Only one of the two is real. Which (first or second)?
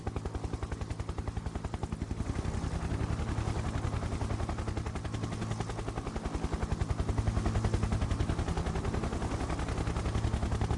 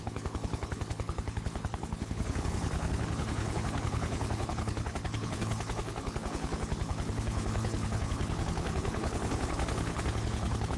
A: first